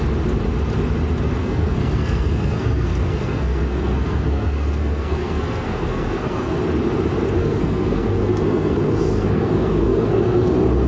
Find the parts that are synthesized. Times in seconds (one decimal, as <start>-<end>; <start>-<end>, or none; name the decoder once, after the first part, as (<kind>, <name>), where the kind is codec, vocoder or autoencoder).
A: 1.4-6.6 (codec, SNAC); 7.4-10.5